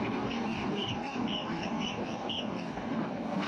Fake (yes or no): yes